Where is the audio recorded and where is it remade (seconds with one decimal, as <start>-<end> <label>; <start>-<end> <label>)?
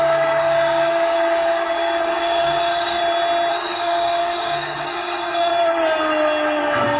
0.0-3.0 remade; 3.0-3.5 recorded; 3.5-5.5 remade; 5.5-6.6 recorded; 6.6-7.0 remade